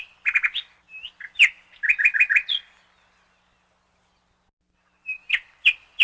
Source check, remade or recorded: recorded